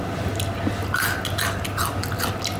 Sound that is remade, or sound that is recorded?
recorded